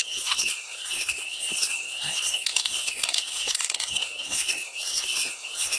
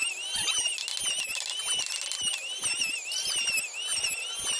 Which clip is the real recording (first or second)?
second